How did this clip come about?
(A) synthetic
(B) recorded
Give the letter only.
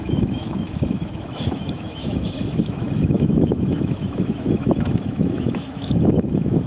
A